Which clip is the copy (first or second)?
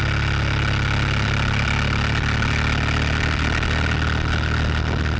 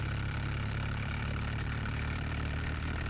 second